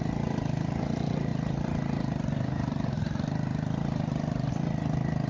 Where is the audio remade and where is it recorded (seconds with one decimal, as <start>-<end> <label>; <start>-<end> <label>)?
0.0-5.3 recorded